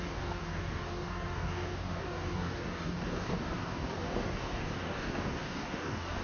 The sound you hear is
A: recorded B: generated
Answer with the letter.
B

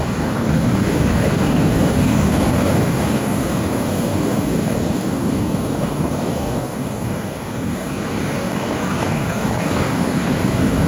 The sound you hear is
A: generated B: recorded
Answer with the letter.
A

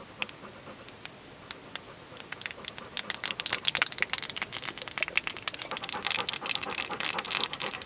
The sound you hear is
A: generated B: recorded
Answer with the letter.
B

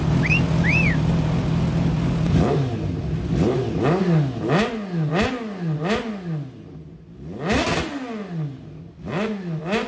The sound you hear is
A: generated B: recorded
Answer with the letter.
B